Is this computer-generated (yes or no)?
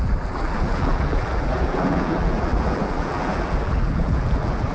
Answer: yes